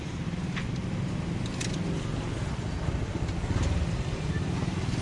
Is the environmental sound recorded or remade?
recorded